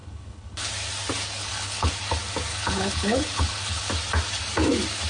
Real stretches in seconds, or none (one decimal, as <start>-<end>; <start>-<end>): 0.7-1.4; 1.9-2.5; 3.9-5.1